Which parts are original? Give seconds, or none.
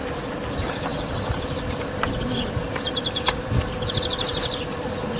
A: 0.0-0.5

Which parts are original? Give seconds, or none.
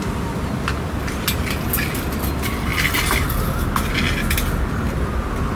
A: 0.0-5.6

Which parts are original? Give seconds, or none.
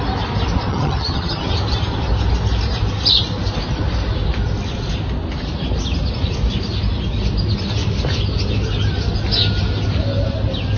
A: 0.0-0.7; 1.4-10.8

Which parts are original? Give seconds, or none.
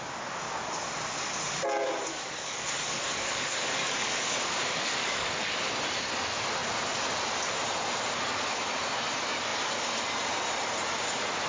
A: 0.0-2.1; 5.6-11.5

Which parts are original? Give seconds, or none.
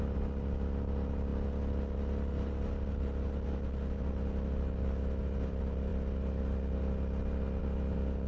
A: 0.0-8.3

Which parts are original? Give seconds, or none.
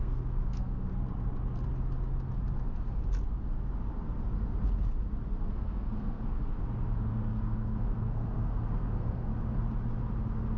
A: 0.9-5.5; 6.5-7.1; 9.3-10.6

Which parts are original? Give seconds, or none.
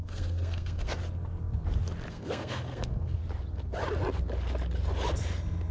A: 1.0-2.1; 3.2-5.7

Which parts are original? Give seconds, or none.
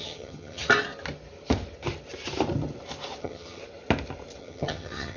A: 0.6-3.2; 3.6-4.4